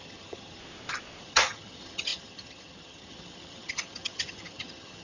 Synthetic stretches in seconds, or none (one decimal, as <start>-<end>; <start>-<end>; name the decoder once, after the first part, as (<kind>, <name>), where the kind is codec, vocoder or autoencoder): 0.0-0.6 (vocoder, HiFi-GAN); 1.2-5.0

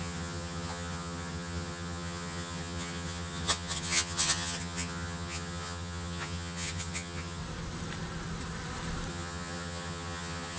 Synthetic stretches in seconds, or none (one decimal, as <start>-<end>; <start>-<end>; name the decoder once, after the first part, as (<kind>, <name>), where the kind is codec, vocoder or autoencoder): 0.0-7.4 (vocoder, HiFi-GAN); 9.1-10.6